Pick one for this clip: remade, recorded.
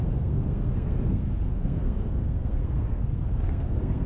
remade